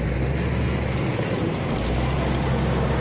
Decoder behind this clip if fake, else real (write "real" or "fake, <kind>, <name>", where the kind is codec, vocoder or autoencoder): real